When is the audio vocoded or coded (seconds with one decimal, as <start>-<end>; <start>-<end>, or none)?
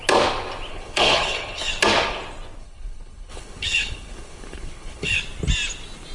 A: 0.7-1.7; 2.6-5.2